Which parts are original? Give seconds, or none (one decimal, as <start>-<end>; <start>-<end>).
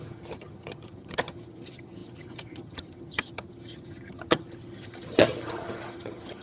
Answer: none